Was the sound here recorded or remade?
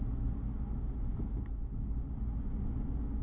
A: recorded